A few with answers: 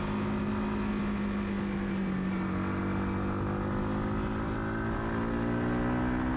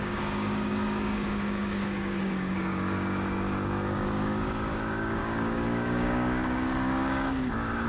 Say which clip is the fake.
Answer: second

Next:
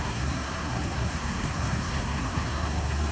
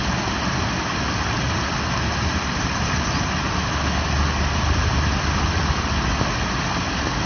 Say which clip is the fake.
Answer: first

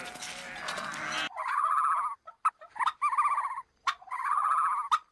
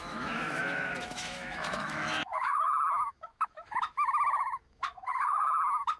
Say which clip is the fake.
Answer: second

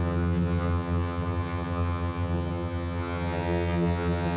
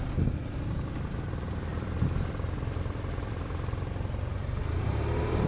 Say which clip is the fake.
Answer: first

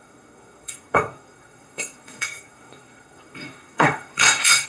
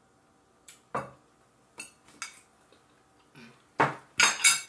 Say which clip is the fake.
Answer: first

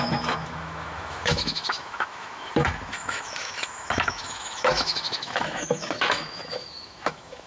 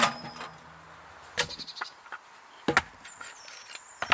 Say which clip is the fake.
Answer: first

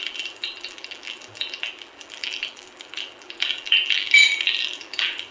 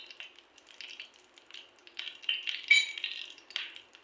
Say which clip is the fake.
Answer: first